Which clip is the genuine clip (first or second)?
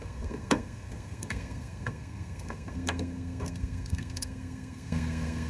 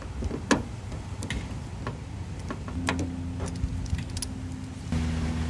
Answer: second